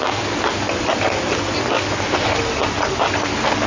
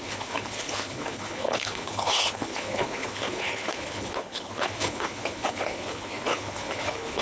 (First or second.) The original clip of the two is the first